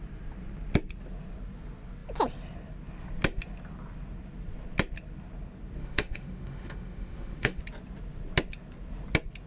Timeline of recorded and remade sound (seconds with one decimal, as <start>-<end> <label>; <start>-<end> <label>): 0.0-5.8 recorded; 5.8-7.6 remade; 7.6-9.5 recorded